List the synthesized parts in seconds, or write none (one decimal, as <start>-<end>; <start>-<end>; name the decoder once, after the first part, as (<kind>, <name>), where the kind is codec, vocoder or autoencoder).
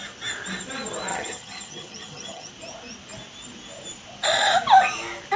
1.1-2.5 (vocoder, HiFi-GAN)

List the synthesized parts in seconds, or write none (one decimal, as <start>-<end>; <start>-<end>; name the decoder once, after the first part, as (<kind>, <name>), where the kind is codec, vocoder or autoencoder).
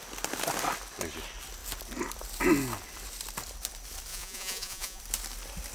4.1-5.0 (vocoder, Vocos)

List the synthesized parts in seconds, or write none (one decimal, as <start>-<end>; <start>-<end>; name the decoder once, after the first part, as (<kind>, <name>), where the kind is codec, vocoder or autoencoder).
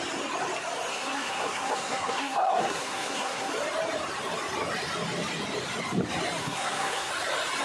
0.9-3.5 (codec, SNAC); 6.4-7.1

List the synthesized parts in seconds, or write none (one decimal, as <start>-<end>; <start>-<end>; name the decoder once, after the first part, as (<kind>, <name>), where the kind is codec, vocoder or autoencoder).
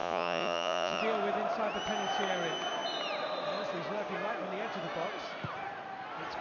0.0-1.0 (vocoder, Vocos)